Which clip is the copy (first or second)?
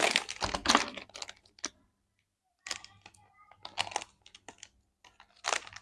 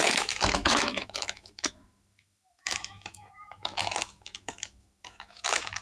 second